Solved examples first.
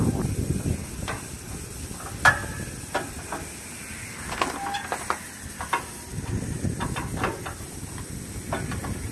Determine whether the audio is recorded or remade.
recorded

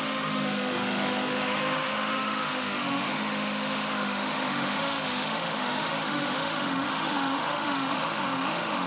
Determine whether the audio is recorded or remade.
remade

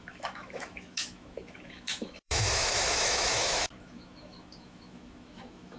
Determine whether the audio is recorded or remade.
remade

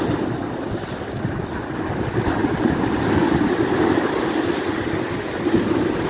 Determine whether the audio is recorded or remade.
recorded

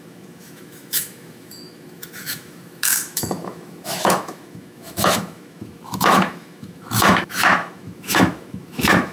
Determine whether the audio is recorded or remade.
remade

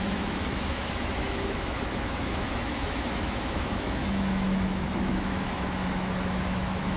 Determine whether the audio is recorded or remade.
remade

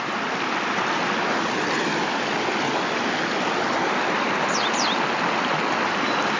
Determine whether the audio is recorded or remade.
recorded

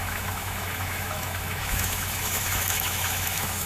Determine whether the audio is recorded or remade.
remade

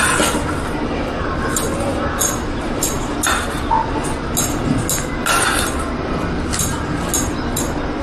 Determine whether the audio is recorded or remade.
recorded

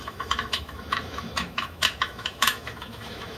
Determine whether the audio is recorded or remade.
remade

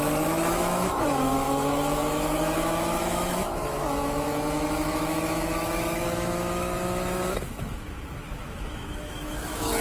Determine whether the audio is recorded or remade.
remade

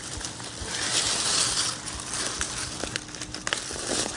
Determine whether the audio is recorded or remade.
recorded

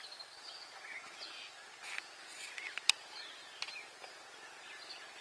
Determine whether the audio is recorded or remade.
recorded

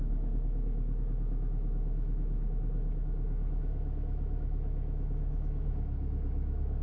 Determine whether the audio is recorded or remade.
remade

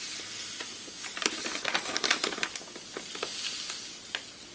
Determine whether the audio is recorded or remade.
recorded